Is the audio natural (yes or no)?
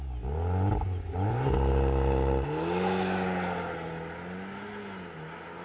yes